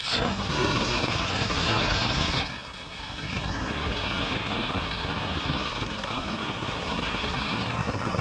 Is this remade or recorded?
remade